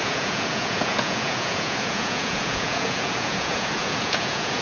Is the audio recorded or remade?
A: remade